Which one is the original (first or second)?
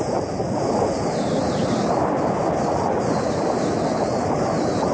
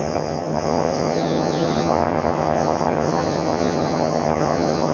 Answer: first